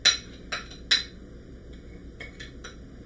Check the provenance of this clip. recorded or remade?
recorded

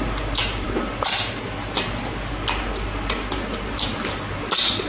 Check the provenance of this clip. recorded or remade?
recorded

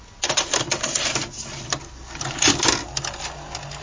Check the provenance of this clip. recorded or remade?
recorded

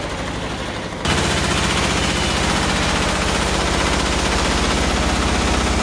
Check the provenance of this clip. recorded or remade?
recorded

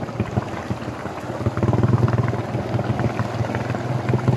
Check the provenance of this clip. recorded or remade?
recorded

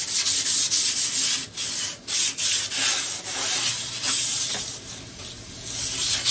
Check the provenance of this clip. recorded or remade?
recorded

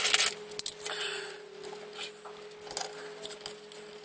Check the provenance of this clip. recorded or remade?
recorded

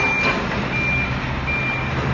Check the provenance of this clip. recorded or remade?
recorded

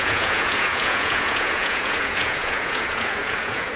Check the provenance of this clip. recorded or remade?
remade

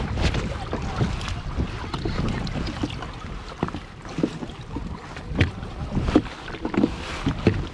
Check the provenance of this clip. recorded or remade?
recorded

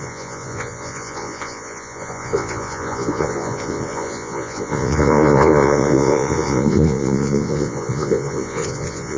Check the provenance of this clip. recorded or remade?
remade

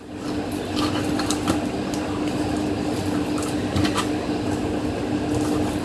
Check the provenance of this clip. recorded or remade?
recorded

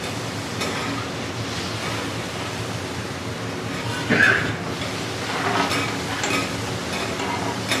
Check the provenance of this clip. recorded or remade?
recorded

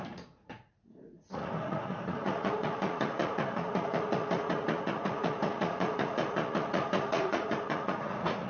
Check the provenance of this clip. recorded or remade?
remade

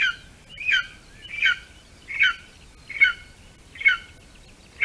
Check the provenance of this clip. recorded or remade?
recorded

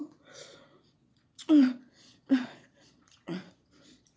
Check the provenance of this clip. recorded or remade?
remade